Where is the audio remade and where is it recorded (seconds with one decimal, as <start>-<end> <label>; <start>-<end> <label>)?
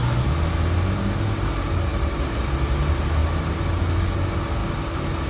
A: 0.0-3.2 recorded; 3.2-3.8 remade; 3.8-5.3 recorded